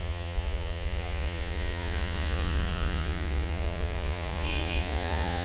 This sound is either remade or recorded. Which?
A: remade